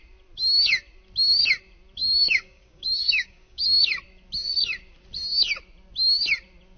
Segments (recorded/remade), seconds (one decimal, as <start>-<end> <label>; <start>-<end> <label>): 0.0-2.0 recorded; 2.0-3.8 remade; 3.8-6.8 recorded